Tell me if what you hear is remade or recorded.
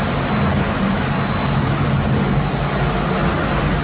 recorded